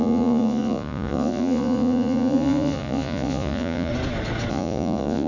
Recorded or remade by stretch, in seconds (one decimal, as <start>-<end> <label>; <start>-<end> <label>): 0.0-3.9 remade; 3.9-4.5 recorded; 4.5-5.3 remade